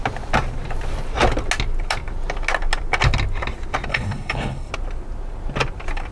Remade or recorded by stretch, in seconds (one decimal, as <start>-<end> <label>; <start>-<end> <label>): 0.0-3.9 recorded; 3.9-4.7 remade; 4.7-6.1 recorded